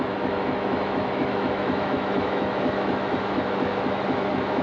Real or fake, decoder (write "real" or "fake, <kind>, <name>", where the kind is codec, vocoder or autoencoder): fake, autoencoder, DAC-VAE